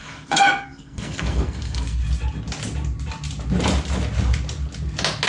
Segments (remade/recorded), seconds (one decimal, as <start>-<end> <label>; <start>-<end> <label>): 0.0-2.0 remade; 2.0-5.3 recorded